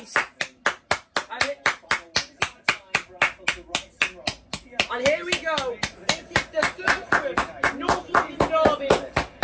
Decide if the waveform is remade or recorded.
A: recorded